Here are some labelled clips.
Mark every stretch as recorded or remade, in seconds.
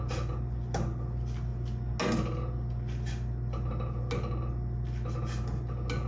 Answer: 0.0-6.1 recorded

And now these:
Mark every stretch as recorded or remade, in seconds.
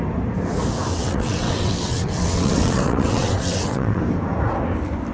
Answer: 0.0-0.9 recorded; 0.9-4.0 remade; 4.0-5.1 recorded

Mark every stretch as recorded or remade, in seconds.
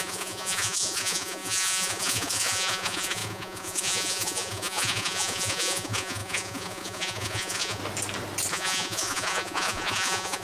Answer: 0.0-7.8 remade; 7.8-8.5 recorded; 8.5-10.4 remade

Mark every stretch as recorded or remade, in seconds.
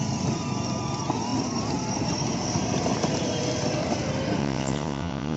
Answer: 0.0-4.4 recorded; 4.4-5.4 remade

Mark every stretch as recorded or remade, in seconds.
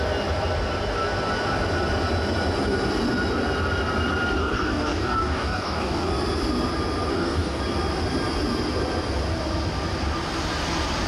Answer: 0.0-4.4 recorded; 4.4-6.1 remade; 6.1-7.1 recorded; 7.1-7.6 remade; 7.6-11.1 recorded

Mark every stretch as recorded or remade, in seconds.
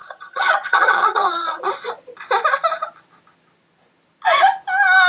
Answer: 0.0-1.6 remade; 1.6-5.1 recorded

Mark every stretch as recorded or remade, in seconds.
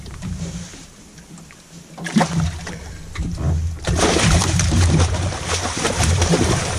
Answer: 0.0-1.1 remade; 1.1-4.0 recorded; 4.0-6.8 remade